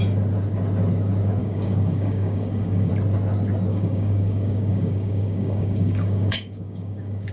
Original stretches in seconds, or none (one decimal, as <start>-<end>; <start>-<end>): 0.0-1.4; 2.9-3.7